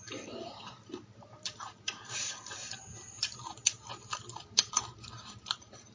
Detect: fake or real fake